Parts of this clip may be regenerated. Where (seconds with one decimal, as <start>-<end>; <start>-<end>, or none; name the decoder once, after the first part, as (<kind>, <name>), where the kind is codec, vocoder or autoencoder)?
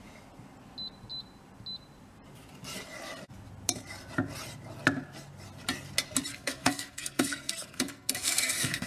6.3-8.9 (codec, SNAC)